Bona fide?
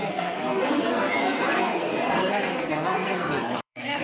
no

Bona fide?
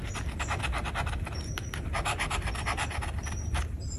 yes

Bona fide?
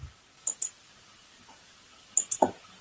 yes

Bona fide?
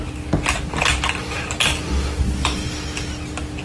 yes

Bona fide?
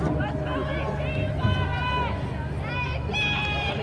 yes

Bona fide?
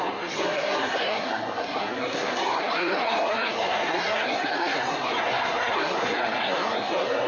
no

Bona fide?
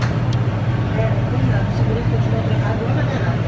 yes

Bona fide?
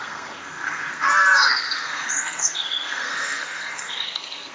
no